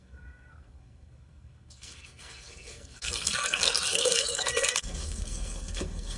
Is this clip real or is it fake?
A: fake